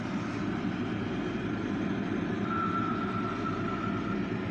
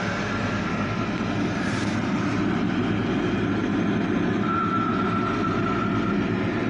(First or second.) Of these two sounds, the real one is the second